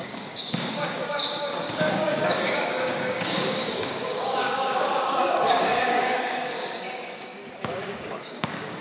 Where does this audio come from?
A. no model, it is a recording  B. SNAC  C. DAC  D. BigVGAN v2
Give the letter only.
C